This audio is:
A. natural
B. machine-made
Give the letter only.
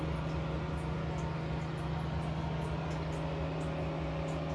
A